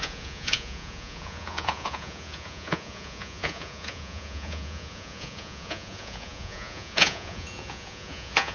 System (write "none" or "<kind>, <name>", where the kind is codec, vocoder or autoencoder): vocoder, Vocos